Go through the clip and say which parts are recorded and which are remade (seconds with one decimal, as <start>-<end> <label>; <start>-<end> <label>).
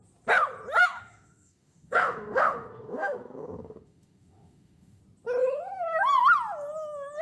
0.0-0.8 recorded; 0.8-5.0 remade; 5.0-7.2 recorded